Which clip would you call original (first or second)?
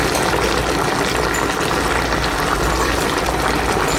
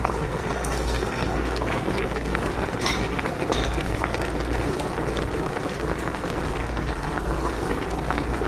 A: first